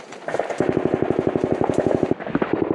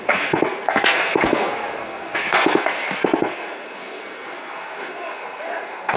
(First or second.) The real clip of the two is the first